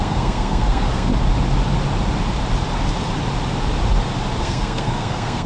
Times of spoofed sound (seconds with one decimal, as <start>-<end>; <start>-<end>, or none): 0.0-1.1; 4.4-5.5